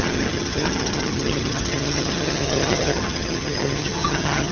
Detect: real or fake fake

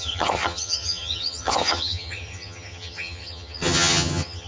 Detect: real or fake fake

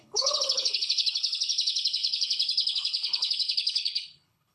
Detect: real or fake fake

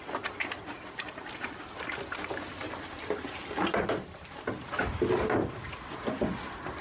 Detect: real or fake real